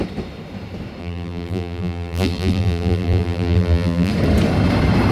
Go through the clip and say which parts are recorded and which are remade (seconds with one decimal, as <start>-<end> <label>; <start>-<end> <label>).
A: 0.0-1.0 recorded; 1.0-4.1 remade; 4.1-5.1 recorded